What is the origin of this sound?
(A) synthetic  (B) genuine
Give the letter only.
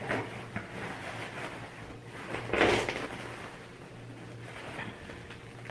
B